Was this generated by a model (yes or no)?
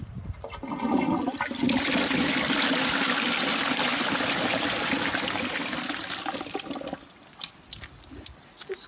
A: no